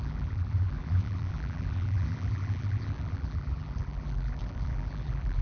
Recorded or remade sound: remade